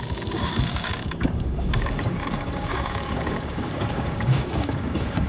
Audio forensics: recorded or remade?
remade